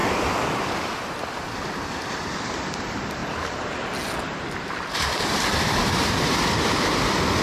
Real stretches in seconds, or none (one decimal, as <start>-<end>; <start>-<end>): 0.0-1.1; 3.2-4.4